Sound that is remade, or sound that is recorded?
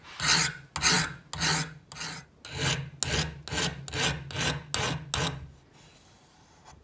recorded